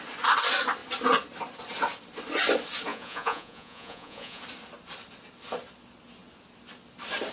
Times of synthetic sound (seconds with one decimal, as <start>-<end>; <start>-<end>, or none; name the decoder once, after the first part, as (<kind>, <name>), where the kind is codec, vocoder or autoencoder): 2.9-4.4 (vocoder, Vocos)